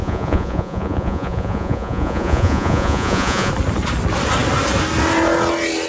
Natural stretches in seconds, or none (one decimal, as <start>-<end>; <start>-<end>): 3.5-5.9